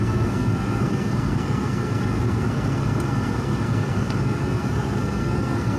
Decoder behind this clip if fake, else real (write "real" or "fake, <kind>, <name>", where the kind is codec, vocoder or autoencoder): fake, codec, SNAC